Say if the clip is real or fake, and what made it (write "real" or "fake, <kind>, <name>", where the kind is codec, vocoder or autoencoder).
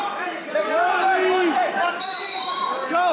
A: real